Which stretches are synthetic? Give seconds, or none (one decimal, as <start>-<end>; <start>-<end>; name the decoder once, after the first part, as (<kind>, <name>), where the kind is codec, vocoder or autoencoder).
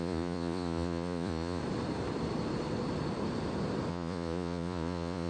0.0-1.6 (vocoder, Vocos); 3.9-5.3